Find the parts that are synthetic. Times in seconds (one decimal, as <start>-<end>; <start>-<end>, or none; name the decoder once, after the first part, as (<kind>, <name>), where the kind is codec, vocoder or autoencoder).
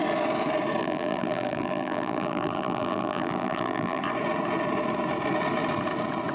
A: 0.8-4.0 (vocoder, BigVGAN v2)